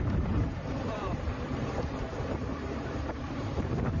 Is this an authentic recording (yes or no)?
no